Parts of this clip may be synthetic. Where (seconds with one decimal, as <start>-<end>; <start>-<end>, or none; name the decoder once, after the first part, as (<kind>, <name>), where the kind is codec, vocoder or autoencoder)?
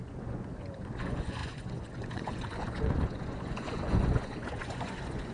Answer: 0.0-5.3 (vocoder, Vocos)